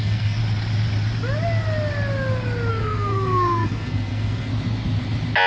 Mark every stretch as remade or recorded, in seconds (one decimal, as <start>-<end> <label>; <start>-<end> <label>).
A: 0.0-0.4 remade; 0.4-2.7 recorded; 2.7-4.5 remade; 4.5-5.5 recorded